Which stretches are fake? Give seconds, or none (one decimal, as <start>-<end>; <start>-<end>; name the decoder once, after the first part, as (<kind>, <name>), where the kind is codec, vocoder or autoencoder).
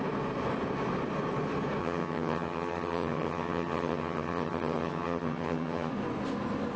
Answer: 1.8-5.9 (vocoder, HiFi-GAN)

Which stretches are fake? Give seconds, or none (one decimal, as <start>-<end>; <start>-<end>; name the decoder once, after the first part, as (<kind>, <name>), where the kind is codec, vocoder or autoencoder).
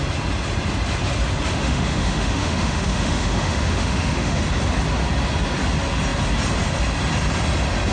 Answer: 1.5-4.4 (autoencoder, DAC-VAE)